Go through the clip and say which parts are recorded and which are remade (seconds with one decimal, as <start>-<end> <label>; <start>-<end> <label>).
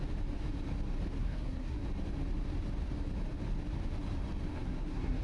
0.0-1.2 recorded; 1.2-1.8 remade; 1.8-4.5 recorded; 4.5-5.2 remade